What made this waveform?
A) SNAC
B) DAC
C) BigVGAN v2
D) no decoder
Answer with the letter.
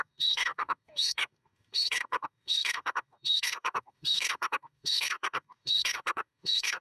B